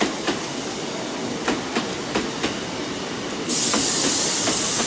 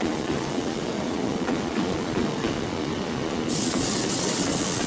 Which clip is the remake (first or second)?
second